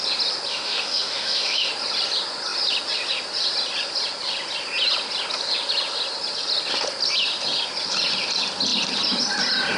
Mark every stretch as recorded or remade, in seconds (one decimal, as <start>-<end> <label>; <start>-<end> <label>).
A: 0.0-0.5 recorded; 0.5-1.7 remade; 1.7-9.8 recorded